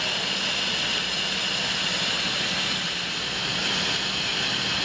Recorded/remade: recorded